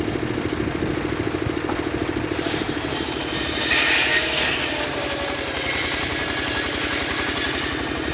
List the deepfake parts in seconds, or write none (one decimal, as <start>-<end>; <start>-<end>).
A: 4.1-4.6